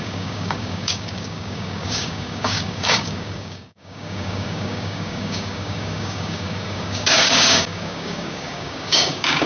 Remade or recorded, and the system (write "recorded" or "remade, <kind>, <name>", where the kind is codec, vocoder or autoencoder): remade, codec, DAC